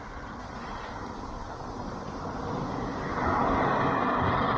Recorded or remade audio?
recorded